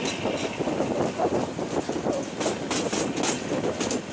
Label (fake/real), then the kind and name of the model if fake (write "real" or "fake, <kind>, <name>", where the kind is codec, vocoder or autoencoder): real